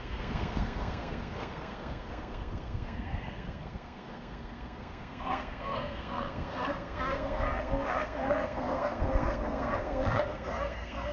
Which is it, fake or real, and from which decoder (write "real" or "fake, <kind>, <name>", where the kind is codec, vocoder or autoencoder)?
fake, codec, SNAC